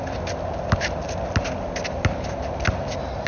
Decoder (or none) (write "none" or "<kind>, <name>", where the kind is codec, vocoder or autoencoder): none